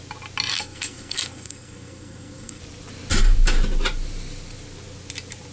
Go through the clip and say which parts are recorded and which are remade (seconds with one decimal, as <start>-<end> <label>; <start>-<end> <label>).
0.0-0.5 recorded; 0.5-2.6 remade; 2.6-5.5 recorded